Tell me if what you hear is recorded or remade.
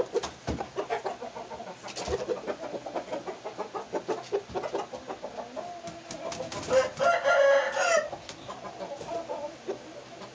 recorded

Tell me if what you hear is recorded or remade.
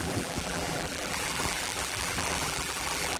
remade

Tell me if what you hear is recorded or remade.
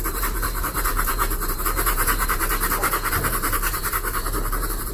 remade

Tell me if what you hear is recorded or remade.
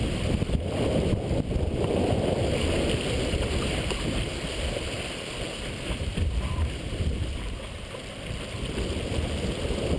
remade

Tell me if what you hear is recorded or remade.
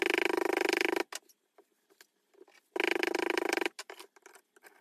recorded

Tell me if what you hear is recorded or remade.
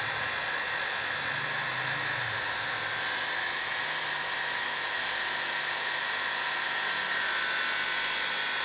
recorded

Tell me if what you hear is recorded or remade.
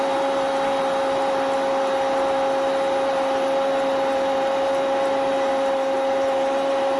recorded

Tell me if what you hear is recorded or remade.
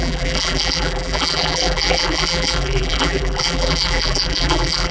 remade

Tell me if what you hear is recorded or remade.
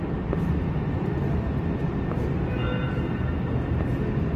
recorded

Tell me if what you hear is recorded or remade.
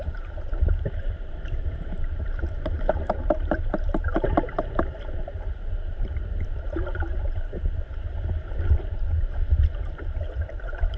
remade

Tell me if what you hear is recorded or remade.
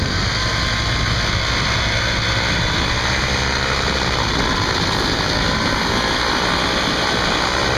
recorded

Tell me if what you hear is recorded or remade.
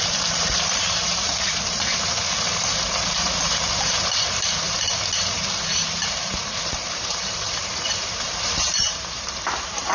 remade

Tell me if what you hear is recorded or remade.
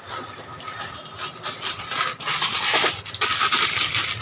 recorded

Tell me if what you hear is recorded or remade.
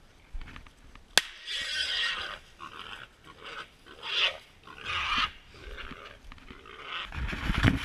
recorded